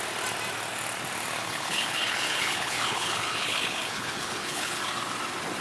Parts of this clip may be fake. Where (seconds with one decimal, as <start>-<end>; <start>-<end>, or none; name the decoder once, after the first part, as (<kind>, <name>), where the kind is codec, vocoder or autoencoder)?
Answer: 1.4-4.8 (codec, HILCodec)